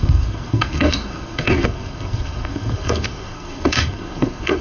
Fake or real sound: fake